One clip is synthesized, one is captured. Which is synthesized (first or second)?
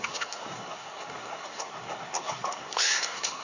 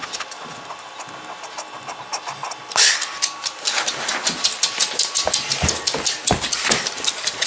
first